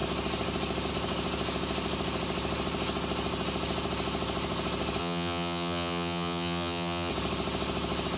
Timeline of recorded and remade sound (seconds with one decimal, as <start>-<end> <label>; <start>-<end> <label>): 0.0-5.0 recorded; 5.0-7.1 remade; 7.1-8.2 recorded